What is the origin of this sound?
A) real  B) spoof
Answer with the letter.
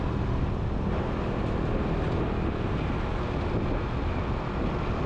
A